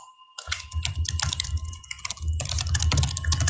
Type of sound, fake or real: real